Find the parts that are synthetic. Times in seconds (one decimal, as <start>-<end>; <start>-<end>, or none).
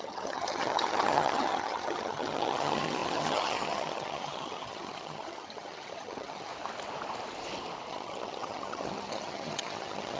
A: 0.0-6.5; 7.9-10.2